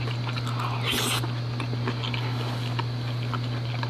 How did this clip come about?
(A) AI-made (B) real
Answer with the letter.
B